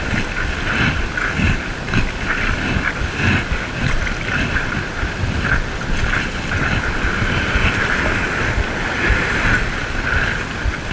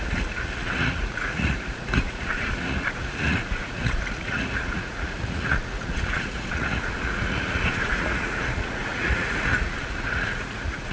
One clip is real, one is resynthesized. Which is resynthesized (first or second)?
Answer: second